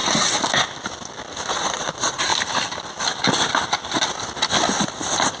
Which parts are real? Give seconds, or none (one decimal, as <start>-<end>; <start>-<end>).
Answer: 0.0-1.5; 2.3-5.4